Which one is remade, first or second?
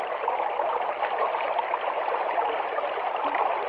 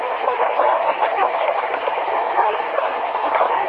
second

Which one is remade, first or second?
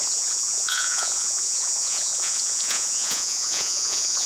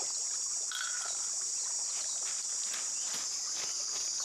first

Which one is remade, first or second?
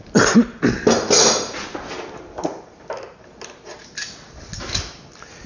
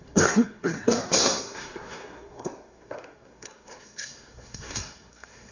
second